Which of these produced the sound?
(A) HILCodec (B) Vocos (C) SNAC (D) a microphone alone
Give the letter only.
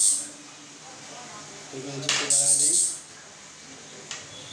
D